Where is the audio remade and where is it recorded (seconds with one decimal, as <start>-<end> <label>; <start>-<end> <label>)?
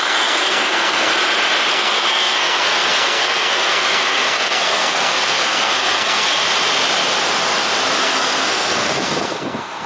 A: 0.0-1.1 remade; 1.1-1.7 recorded; 1.7-6.4 remade; 6.4-8.0 recorded; 8.0-9.9 remade